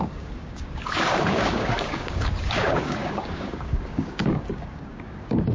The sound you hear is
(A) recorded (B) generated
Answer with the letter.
B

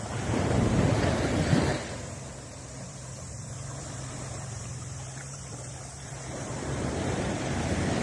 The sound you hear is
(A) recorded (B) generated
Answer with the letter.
B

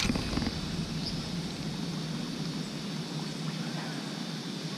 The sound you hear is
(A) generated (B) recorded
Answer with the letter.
B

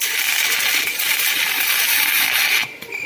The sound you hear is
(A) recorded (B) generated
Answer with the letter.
A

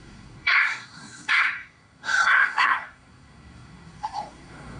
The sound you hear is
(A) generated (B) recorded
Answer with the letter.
A